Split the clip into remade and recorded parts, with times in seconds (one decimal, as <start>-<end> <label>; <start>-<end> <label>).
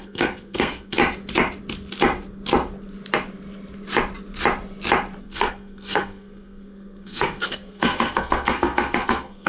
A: 0.0-1.0 remade; 1.0-5.2 recorded; 5.2-9.5 remade